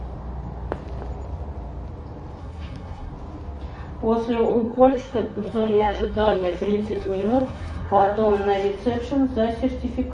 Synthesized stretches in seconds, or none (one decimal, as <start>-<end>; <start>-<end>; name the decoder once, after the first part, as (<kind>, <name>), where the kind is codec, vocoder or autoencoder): 2.4-3.1 (codec, SNAC); 4.5-8.3